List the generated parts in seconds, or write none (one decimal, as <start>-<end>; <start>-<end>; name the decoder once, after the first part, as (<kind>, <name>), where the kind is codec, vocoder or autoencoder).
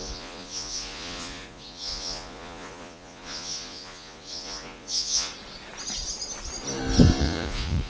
0.0-5.3 (vocoder, Vocos); 7.2-7.9